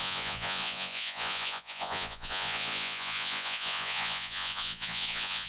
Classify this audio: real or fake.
fake